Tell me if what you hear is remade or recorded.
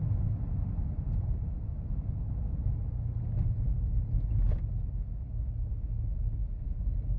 recorded